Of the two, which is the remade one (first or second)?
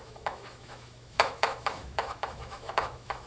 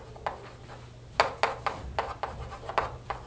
first